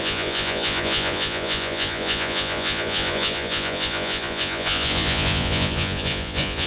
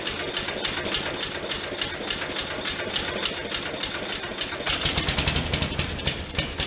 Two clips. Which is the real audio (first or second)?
second